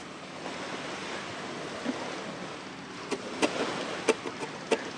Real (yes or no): yes